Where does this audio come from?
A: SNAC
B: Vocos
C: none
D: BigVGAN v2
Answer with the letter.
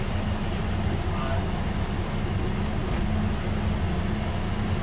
C